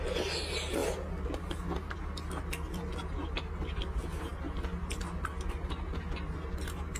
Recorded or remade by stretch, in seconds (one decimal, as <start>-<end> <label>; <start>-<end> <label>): 0.0-7.0 recorded